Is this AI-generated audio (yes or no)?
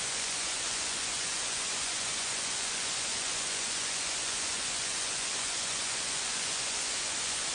yes